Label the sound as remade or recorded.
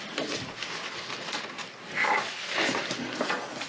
recorded